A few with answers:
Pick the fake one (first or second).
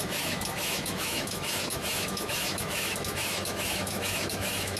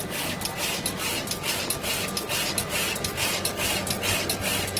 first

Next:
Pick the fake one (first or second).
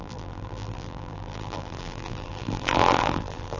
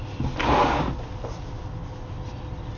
first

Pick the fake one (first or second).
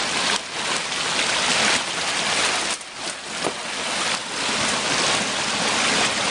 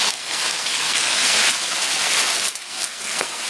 second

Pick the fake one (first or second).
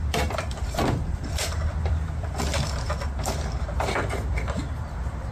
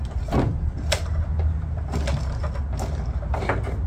first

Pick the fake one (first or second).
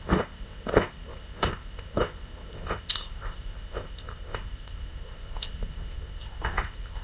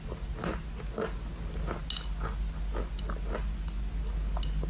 first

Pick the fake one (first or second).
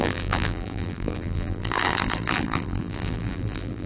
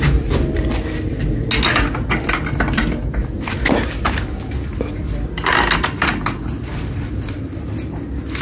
first